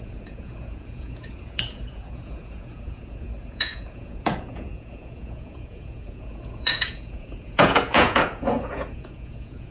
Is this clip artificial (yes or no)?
yes